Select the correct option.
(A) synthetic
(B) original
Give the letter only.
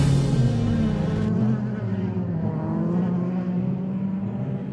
B